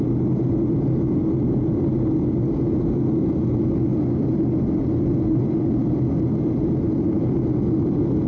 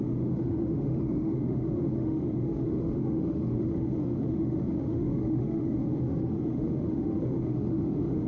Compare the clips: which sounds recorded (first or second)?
first